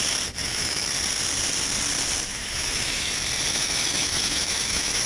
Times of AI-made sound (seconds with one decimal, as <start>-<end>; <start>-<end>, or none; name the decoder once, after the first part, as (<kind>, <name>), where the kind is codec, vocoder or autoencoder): 0.4-0.9 (autoencoder, DAC-VAE); 2.3-3.1; 3.5-5.1